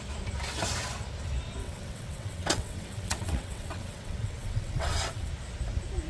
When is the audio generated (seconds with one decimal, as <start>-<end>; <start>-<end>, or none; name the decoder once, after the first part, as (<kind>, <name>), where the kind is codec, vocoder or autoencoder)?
1.6-5.3 (vocoder, WaveNeXt)